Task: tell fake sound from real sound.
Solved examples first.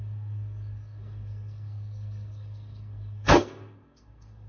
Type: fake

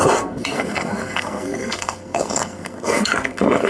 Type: fake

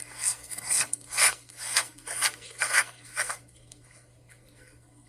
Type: fake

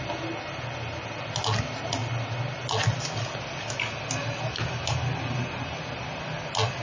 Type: real